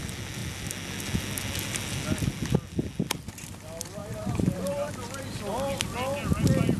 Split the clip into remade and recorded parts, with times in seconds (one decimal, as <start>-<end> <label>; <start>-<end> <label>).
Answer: 0.0-4.0 recorded; 4.0-4.9 remade; 4.9-6.8 recorded